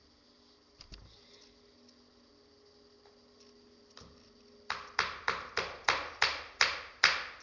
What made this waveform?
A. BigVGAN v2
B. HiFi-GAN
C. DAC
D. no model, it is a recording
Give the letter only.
D